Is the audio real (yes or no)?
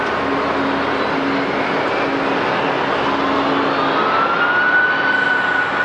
yes